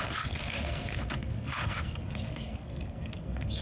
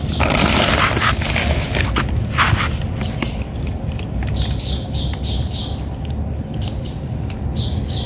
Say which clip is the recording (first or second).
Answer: second